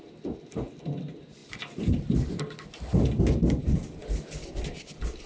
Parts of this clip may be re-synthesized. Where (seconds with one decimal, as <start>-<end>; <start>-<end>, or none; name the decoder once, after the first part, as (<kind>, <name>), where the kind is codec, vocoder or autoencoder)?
none